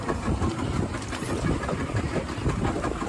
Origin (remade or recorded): recorded